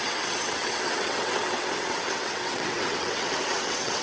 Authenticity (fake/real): fake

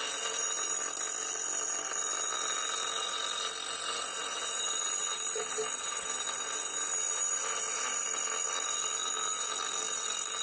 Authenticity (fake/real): real